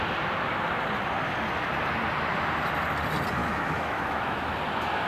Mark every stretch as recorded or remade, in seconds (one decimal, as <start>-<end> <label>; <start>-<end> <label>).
0.0-3.4 recorded; 3.4-4.6 remade; 4.6-5.1 recorded

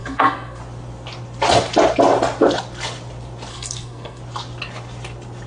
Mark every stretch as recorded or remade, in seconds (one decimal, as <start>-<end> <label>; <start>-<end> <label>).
0.0-0.6 remade; 0.6-3.5 recorded; 3.5-4.2 remade; 4.2-5.5 recorded

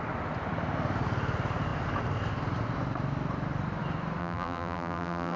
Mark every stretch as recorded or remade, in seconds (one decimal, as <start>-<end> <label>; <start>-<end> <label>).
0.0-4.2 recorded; 4.2-5.4 remade

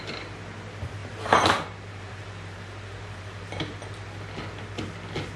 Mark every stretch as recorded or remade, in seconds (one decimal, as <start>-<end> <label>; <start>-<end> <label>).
0.0-1.0 recorded; 1.0-4.2 remade; 4.2-5.4 recorded

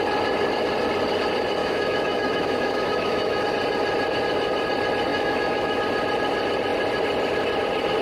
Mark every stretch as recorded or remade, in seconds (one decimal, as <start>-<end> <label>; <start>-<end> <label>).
0.0-1.6 recorded; 1.6-3.4 remade; 3.4-5.1 recorded; 5.1-5.8 remade; 5.8-8.0 recorded